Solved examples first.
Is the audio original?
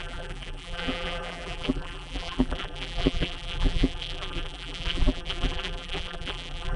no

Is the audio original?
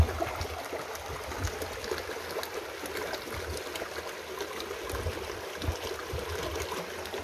yes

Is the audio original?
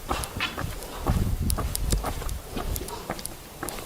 no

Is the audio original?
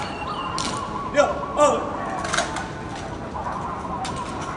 yes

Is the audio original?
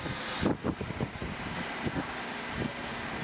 no